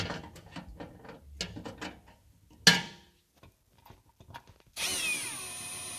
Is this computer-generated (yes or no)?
no